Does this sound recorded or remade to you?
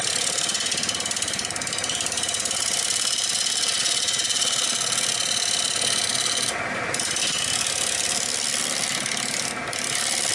recorded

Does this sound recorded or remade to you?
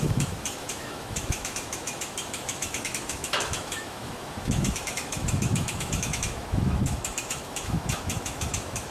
remade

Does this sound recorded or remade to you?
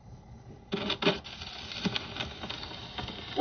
recorded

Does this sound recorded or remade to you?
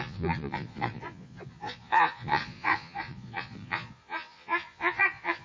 remade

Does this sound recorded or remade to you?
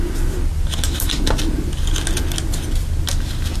recorded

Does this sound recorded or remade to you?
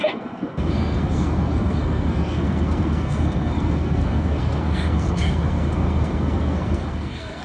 remade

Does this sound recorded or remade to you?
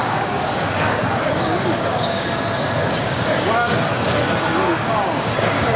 remade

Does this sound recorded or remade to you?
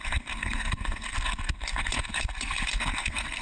remade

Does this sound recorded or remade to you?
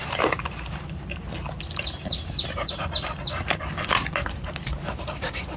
recorded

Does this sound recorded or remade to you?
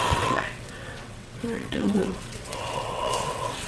remade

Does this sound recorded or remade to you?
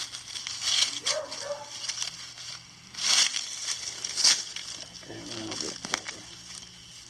recorded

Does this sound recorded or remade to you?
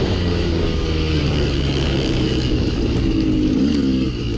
remade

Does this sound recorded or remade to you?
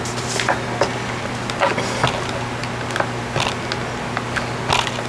recorded